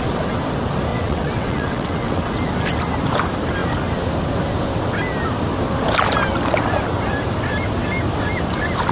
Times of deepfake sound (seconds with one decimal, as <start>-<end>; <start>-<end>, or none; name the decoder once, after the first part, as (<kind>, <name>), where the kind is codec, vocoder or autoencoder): 0.9-2.3 (vocoder, WaveNeXt)